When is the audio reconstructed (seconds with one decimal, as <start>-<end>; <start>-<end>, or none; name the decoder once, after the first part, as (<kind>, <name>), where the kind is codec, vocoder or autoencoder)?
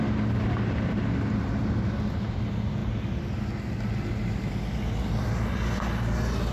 none